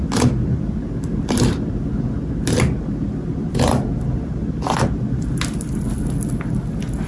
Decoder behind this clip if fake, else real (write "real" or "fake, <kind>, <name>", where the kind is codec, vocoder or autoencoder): real